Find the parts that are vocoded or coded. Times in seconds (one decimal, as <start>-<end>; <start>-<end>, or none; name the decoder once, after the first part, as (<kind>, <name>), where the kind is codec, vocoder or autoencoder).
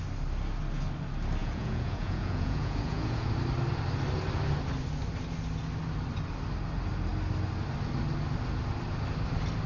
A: 1.4-3.3 (vocoder, Vocos)